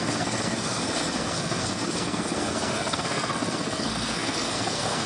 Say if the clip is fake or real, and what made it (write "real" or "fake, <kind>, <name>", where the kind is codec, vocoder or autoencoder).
fake, codec, SNAC